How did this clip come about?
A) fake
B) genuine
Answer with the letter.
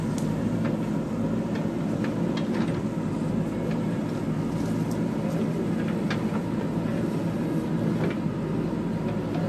B